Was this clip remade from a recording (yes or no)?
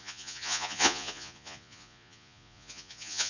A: yes